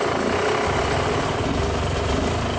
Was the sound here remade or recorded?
recorded